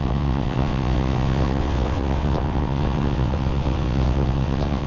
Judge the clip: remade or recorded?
remade